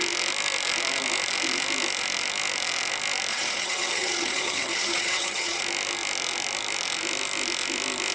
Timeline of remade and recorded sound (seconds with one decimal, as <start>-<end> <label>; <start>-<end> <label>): 0.0-3.3 recorded; 3.3-5.6 remade; 5.6-8.1 recorded